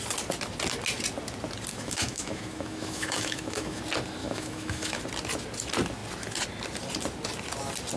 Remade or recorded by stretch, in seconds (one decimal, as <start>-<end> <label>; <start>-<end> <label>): 0.0-1.7 recorded; 1.7-3.8 remade; 3.8-4.2 recorded; 4.2-5.0 remade; 5.0-8.0 recorded